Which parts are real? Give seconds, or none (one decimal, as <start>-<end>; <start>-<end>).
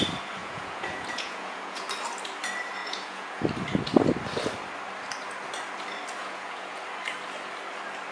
0.0-0.4; 1.9-2.8; 3.4-6.2; 6.8-8.1